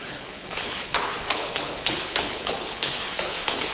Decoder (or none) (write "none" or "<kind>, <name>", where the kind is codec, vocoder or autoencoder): codec, HILCodec